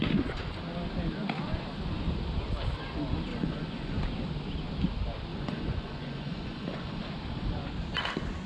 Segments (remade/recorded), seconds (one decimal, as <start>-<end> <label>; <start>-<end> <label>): 0.0-3.3 recorded; 3.3-4.0 remade; 4.0-5.3 recorded; 5.3-7.0 remade; 7.0-8.5 recorded